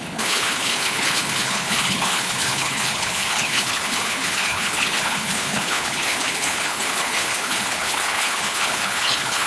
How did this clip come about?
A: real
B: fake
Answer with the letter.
B